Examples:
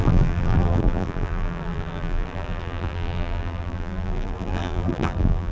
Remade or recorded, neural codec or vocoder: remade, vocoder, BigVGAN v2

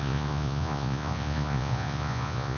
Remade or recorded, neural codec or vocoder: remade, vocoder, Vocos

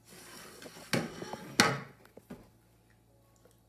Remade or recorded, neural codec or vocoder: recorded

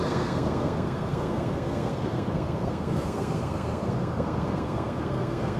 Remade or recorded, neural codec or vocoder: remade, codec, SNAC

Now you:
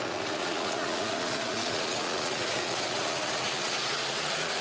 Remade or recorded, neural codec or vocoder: remade, vocoder, Vocos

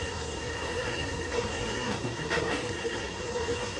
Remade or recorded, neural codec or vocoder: remade, codec, SNAC